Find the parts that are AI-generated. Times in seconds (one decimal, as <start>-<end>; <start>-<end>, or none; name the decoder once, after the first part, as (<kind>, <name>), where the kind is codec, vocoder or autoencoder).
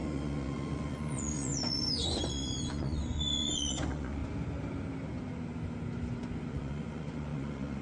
0.0-4.2 (vocoder, Vocos); 6.5-7.8